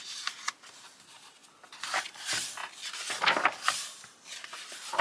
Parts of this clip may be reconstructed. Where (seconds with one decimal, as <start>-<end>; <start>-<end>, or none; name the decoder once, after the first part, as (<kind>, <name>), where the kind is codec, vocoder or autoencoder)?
none